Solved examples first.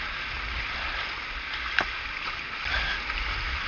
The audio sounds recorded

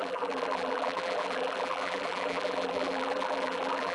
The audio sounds remade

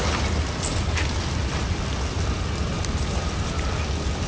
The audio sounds recorded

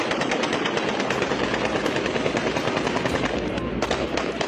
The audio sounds recorded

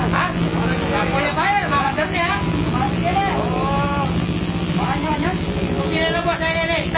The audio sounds remade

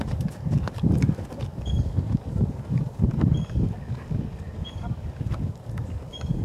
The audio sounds remade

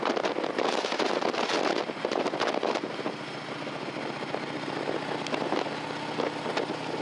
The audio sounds recorded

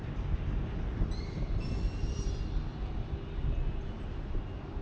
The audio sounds recorded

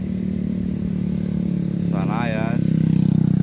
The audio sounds recorded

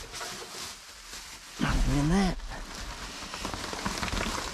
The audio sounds recorded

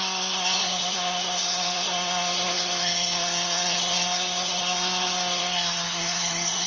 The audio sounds remade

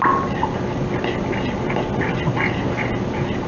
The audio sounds recorded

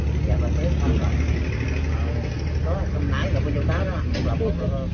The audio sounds recorded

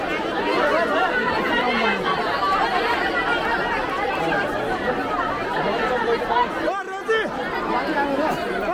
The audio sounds recorded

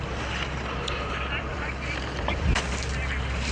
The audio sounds remade